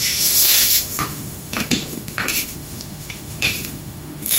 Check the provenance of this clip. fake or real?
fake